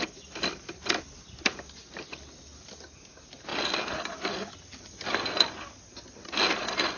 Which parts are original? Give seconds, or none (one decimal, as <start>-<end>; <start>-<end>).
0.0-7.0